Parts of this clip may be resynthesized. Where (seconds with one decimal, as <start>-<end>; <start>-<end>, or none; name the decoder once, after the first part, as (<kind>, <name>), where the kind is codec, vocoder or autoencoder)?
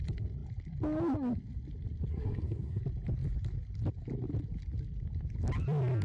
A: 2.1-2.8 (codec, SNAC)